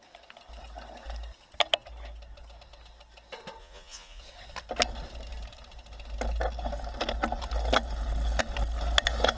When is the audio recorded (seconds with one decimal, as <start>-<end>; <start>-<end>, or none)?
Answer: 0.0-3.6; 4.2-9.4